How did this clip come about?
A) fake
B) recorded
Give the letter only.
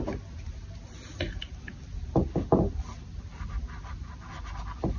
B